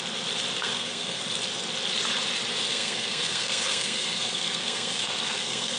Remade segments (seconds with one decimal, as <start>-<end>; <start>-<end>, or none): 0.6-1.2; 2.7-5.8